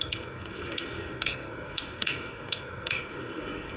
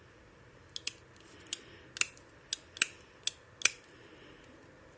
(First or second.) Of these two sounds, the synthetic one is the first